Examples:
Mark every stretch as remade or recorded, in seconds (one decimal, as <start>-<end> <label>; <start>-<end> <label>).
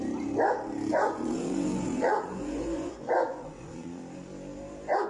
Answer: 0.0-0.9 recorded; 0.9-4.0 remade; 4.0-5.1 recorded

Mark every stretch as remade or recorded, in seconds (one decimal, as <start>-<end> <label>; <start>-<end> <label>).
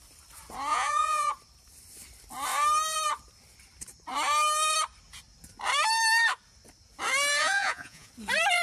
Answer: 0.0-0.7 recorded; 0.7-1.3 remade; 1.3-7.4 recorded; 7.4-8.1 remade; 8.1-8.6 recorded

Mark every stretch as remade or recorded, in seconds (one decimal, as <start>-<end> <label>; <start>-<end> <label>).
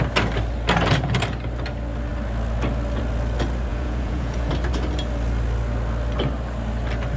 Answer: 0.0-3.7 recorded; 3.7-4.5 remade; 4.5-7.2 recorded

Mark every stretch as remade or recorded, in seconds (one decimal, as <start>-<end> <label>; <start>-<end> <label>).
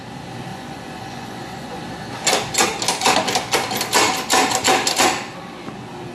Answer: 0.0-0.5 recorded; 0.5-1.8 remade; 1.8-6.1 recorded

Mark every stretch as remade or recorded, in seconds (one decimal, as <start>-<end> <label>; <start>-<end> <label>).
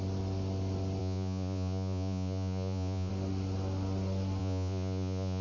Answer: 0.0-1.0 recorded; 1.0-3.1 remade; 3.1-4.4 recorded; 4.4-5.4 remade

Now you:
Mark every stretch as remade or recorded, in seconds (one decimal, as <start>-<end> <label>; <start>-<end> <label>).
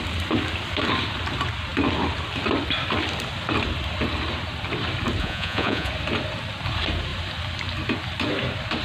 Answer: 0.0-5.2 recorded; 5.2-5.9 remade; 5.9-8.8 recorded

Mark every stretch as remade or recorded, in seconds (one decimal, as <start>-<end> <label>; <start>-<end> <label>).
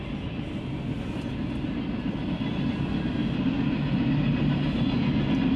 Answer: 0.0-5.6 recorded